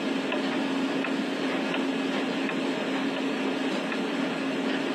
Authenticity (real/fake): real